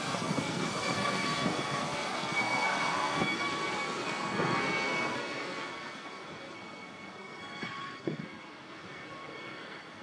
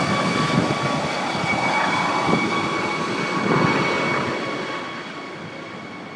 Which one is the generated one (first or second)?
first